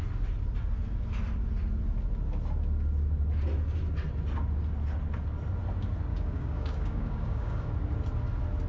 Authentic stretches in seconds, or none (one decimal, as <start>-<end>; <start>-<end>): 0.0-6.1; 7.7-8.7